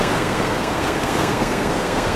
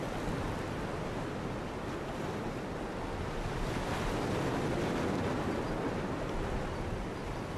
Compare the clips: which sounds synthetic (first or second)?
first